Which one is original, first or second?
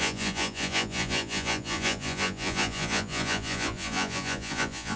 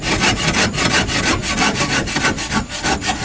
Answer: second